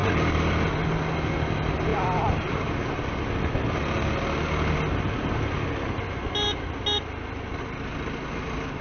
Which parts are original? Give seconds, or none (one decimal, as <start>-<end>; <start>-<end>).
0.0-8.8